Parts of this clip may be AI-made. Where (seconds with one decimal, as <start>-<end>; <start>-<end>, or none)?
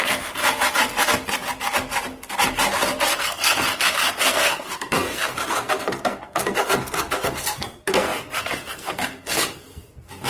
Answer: 0.0-0.4; 3.2-10.3